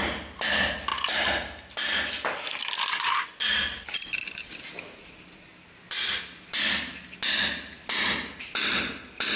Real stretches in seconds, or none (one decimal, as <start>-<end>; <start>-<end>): 0.0-9.4